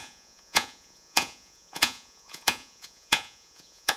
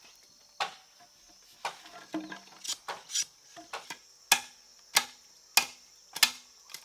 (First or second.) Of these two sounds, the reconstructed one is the first